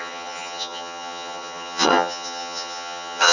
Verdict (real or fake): fake